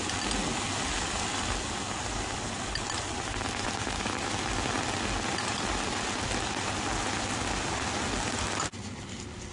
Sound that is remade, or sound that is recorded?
recorded